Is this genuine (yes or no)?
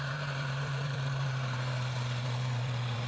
no